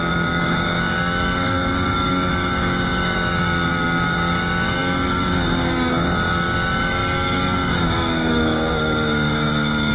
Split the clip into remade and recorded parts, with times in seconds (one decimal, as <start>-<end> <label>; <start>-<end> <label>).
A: 0.0-9.9 remade